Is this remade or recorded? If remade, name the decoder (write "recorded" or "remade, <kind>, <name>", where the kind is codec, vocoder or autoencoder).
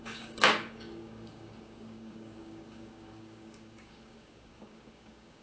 remade, codec, DAC